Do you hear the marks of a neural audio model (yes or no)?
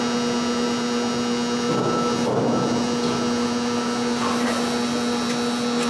no